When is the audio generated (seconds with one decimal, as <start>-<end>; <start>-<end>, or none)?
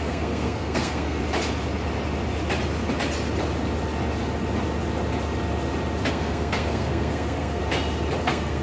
0.0-1.2; 6.1-7.6; 8.2-8.6